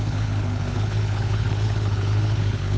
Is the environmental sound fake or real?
fake